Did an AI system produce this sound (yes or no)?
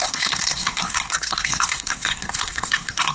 yes